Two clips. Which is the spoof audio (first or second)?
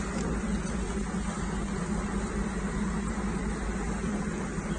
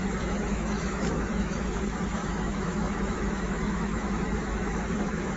second